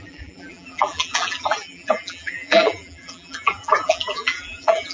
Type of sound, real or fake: fake